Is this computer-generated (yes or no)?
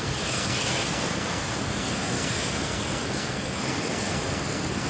yes